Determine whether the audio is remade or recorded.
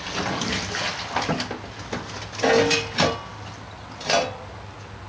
recorded